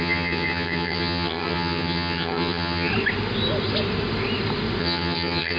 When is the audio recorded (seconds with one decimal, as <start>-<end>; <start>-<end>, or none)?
2.9-4.8

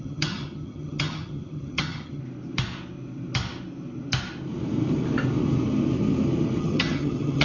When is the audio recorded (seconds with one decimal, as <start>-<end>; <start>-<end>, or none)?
2.2-6.6